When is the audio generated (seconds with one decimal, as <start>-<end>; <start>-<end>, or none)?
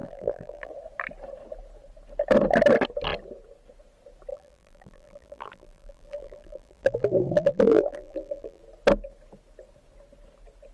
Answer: 0.0-0.7; 4.3-8.6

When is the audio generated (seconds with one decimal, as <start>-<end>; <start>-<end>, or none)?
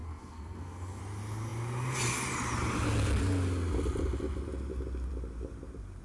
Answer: 0.0-1.0